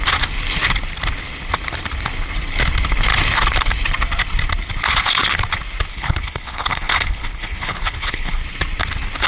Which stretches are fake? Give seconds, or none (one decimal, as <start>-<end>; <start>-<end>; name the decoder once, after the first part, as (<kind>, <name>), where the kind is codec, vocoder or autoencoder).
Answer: 5.9-8.4 (codec, HILCodec)